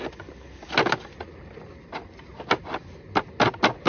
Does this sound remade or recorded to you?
recorded